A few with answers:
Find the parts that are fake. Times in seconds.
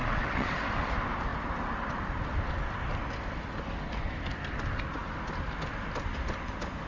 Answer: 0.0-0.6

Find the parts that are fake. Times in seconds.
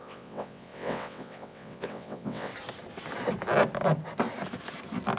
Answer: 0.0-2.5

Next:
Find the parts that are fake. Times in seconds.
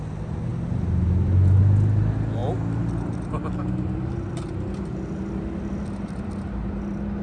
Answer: none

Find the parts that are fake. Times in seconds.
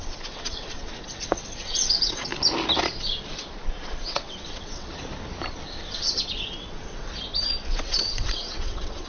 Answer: 0.0-2.3; 4.1-4.9; 5.5-7.1; 7.7-9.1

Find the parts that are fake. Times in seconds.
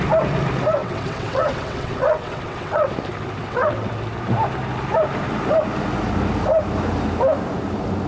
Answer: 0.8-2.9; 3.4-3.9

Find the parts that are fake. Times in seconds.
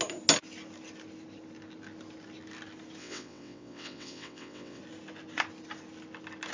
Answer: 3.0-4.8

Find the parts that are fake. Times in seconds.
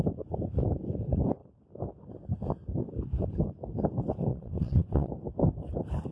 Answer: 4.3-5.1